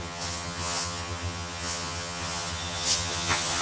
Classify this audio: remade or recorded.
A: remade